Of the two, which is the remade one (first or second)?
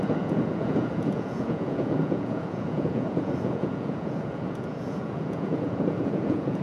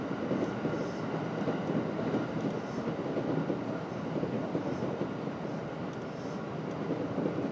first